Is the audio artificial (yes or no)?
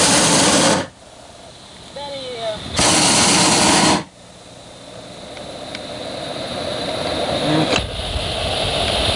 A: no